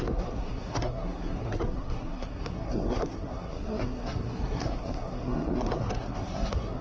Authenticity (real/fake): fake